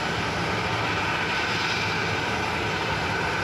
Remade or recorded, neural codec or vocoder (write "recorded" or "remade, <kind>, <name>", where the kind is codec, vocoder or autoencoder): recorded